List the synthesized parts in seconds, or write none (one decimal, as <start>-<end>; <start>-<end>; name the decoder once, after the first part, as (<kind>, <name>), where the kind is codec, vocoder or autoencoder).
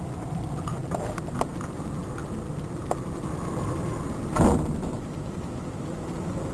none